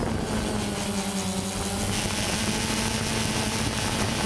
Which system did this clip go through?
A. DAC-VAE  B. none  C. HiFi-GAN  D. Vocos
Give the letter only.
B